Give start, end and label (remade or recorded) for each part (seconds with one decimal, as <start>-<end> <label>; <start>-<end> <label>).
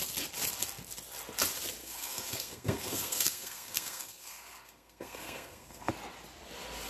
0.0-1.8 recorded; 1.8-5.9 remade; 5.9-6.9 recorded